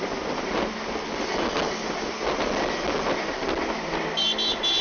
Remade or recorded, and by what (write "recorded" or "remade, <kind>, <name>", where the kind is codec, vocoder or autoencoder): recorded